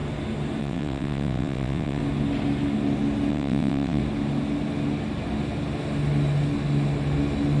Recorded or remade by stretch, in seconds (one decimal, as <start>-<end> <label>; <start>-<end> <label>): 0.0-0.6 recorded; 0.6-2.0 remade; 2.0-3.3 recorded; 3.3-4.0 remade; 4.0-7.6 recorded